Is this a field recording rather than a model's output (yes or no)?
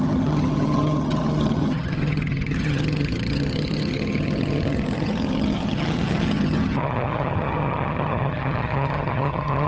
no